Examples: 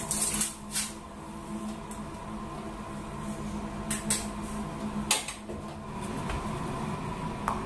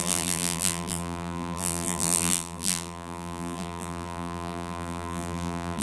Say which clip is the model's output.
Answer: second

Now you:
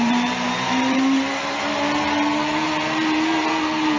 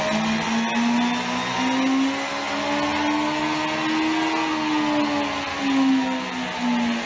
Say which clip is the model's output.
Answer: first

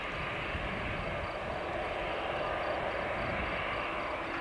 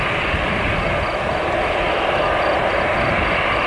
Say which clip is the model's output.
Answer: second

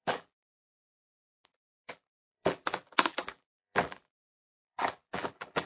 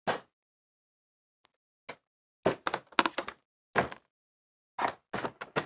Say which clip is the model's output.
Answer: first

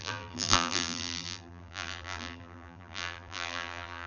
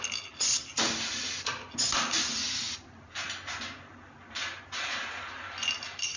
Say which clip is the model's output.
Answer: first